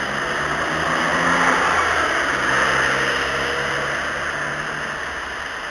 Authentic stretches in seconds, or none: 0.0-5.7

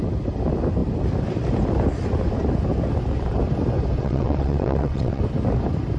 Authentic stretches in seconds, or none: 0.0-4.0; 5.2-6.0

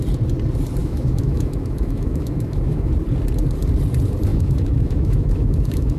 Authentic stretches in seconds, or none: 0.0-0.8; 2.9-4.3